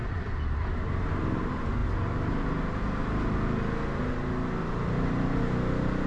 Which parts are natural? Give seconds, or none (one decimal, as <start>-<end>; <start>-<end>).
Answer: 0.0-1.8; 3.0-4.6; 5.4-6.1